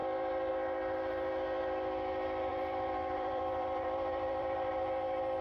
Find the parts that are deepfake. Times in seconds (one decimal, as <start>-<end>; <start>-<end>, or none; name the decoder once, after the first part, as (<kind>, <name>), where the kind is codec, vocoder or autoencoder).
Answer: 2.5-4.7 (vocoder, BigVGAN v2)